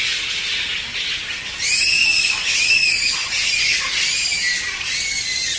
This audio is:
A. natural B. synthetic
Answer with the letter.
A